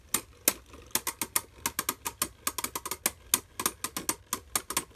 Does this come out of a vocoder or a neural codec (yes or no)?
no